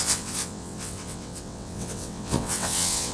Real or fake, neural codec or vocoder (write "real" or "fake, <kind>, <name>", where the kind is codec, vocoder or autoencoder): fake, vocoder, WaveNeXt